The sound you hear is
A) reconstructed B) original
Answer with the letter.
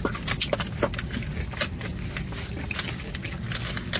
B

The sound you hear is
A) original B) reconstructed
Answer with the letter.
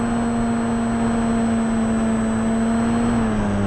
A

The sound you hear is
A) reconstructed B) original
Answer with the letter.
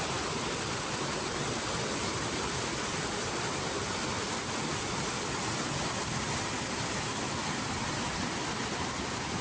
B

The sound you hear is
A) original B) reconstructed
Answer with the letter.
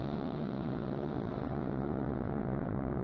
B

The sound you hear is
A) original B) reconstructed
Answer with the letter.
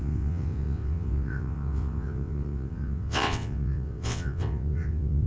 B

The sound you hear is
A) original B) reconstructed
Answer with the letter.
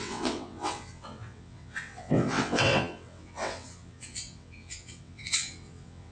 B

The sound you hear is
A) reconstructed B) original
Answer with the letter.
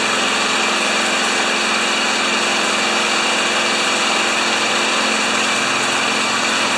B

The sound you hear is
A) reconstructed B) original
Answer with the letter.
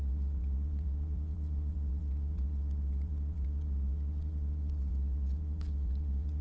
A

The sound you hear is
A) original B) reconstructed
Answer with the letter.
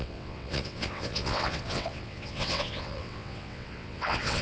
B